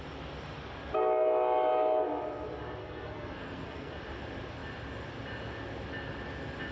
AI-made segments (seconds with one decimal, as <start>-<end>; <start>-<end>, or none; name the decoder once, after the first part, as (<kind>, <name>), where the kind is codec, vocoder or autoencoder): 2.8-3.9 (codec, SNAC)